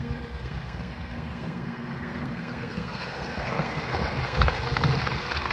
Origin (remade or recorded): remade